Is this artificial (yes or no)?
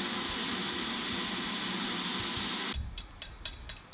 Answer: no